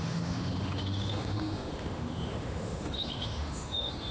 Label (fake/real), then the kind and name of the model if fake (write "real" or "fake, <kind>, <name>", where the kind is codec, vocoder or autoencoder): fake, autoencoder, DAC-VAE